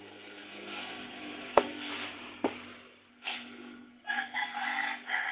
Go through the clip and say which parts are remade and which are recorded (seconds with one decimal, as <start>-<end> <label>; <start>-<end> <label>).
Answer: 0.0-1.9 remade; 1.9-3.1 recorded; 3.1-5.3 remade